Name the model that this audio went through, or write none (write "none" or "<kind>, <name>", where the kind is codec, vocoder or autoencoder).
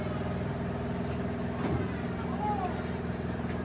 none